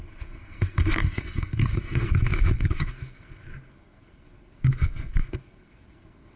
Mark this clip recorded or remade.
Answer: remade